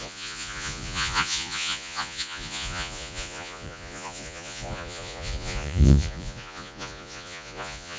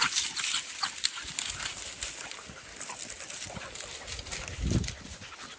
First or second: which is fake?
first